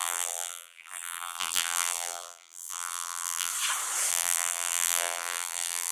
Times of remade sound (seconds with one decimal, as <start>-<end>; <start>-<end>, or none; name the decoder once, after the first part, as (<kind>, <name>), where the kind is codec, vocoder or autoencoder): 0.0-3.5 (vocoder, BigVGAN v2); 4.1-5.9